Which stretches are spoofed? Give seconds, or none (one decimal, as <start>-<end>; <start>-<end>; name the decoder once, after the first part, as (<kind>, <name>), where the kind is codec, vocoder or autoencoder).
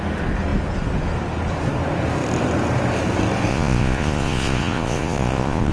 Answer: 3.5-5.7 (vocoder, Vocos)